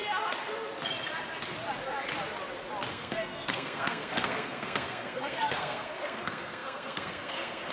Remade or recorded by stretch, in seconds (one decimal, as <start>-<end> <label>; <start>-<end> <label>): 0.0-2.9 recorded; 2.9-7.7 remade